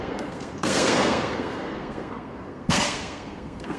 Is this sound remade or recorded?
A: remade